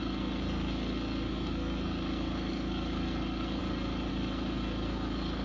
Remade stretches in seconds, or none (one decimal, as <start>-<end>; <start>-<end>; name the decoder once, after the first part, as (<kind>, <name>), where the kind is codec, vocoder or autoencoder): 0.0-3.6 (codec, SNAC); 4.1-5.4